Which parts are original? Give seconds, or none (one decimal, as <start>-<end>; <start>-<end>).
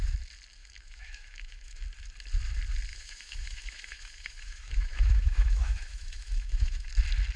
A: 0.0-0.6; 1.8-2.9; 6.9-7.4